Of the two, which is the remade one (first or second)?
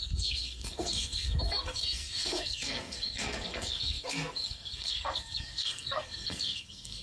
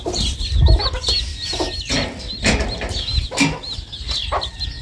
first